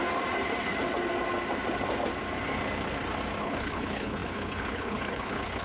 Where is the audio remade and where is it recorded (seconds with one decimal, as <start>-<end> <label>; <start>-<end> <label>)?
0.0-3.4 recorded; 3.4-5.6 remade

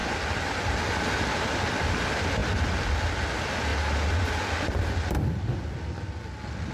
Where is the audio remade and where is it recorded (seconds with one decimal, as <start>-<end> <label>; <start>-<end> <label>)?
0.0-6.7 recorded

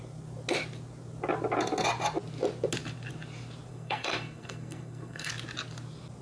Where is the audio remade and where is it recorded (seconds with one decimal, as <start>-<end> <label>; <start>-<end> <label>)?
0.0-3.7 recorded; 3.7-5.3 remade; 5.3-6.2 recorded

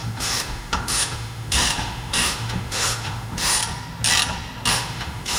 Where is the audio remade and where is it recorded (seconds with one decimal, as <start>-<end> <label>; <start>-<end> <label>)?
0.0-3.6 remade; 3.6-4.7 recorded; 4.7-5.4 remade

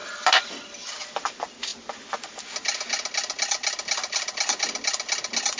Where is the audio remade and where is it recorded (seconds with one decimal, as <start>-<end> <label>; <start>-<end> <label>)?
0.0-5.6 recorded

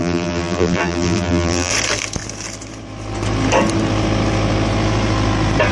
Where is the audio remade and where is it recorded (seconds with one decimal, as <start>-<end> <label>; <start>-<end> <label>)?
0.0-1.7 remade; 1.7-5.7 recorded

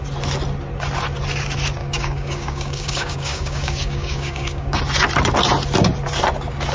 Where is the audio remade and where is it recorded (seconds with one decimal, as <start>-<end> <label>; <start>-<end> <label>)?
0.0-1.8 recorded; 1.8-4.8 remade; 4.8-6.7 recorded